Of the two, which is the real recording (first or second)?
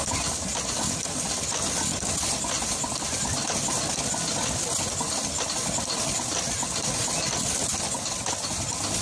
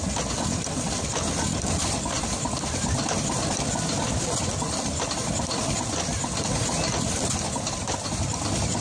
first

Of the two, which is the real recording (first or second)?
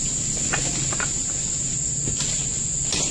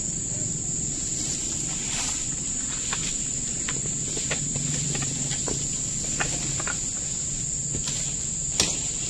first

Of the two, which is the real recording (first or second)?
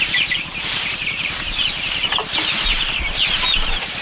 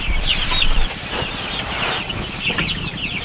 second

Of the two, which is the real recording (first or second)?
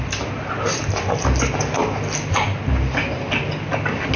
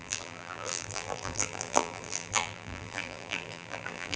first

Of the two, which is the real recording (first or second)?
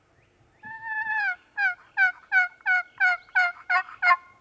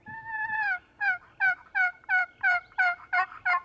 first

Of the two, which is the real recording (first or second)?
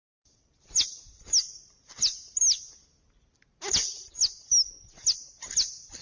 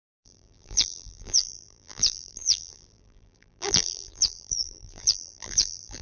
first